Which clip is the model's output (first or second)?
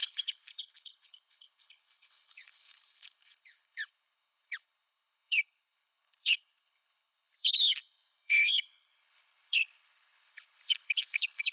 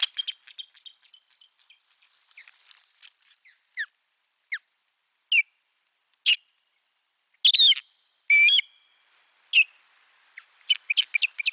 first